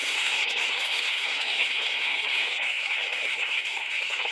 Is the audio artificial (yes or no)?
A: yes